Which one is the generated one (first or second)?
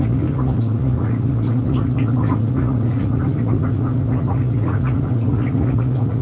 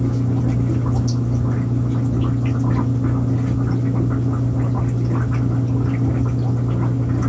first